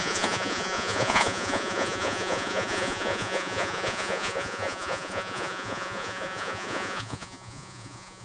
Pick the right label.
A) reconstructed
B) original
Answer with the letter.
A